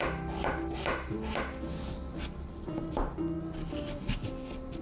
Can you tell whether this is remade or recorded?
recorded